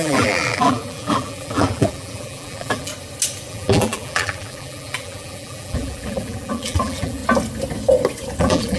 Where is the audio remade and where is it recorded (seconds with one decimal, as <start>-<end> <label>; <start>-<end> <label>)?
0.0-2.9 remade; 2.9-3.5 recorded; 3.5-7.2 remade; 7.2-8.4 recorded; 8.4-8.8 remade